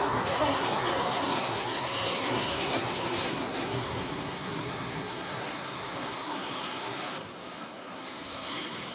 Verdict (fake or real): fake